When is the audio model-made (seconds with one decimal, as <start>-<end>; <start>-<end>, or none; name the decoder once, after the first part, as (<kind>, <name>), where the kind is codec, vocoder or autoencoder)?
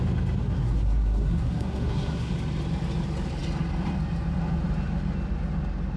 0.4-2.3 (codec, SNAC)